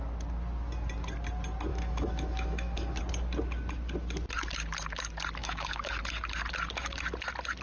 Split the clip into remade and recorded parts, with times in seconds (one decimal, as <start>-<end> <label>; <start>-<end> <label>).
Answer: 0.0-1.7 recorded; 1.7-3.0 remade; 3.0-5.4 recorded; 5.4-6.0 remade; 6.0-7.6 recorded